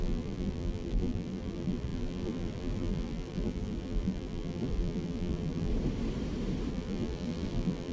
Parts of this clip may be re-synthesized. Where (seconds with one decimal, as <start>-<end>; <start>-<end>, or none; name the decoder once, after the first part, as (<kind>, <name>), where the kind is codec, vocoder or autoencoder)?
0.0-5.7 (vocoder, BigVGAN v2); 6.7-7.9